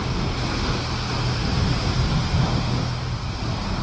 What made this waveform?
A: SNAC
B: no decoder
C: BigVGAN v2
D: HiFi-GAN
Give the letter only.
B